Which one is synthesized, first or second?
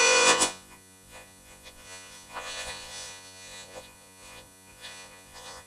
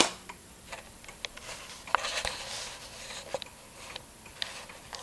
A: first